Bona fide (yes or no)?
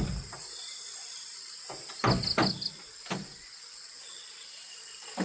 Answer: yes